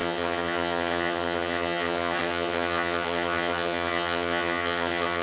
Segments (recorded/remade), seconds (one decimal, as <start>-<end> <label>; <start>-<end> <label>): 0.0-5.2 remade